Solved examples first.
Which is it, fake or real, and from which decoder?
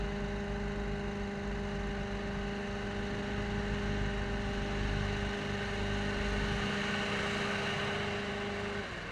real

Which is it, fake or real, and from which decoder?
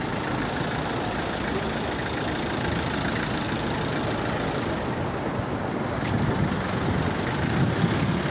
real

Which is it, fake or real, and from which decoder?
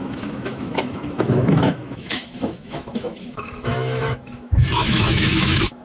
fake, autoencoder, DAC-VAE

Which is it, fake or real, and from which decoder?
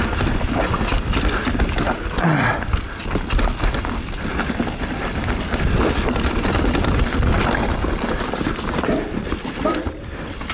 real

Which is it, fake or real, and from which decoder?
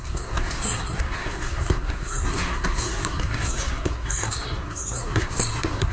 fake, codec, SNAC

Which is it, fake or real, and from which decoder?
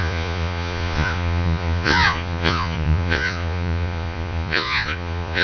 fake, vocoder, Vocos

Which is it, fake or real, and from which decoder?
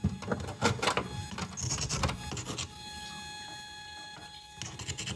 real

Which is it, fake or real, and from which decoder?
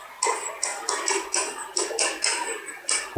real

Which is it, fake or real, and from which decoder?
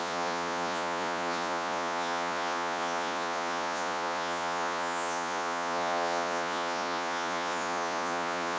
fake, vocoder, Vocos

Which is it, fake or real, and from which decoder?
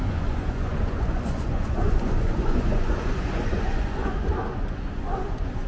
fake, vocoder, Vocos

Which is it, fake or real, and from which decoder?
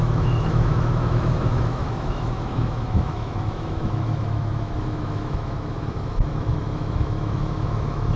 fake, autoencoder, DAC-VAE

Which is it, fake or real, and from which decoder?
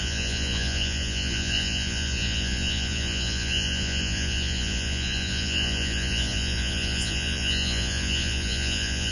fake, vocoder, Vocos